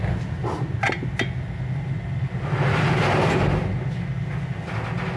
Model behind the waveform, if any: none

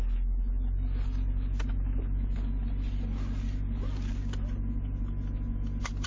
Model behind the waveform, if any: none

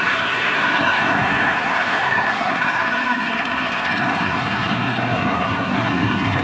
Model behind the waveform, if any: codec, SNAC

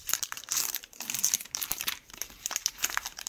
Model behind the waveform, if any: vocoder, BigVGAN v2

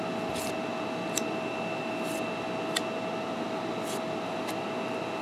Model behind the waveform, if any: none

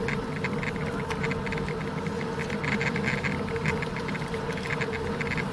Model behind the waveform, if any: none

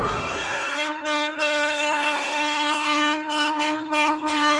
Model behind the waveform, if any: codec, SNAC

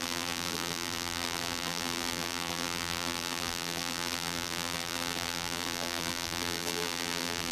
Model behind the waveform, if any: vocoder, BigVGAN v2